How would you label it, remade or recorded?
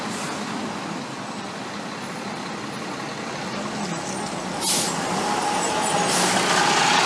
recorded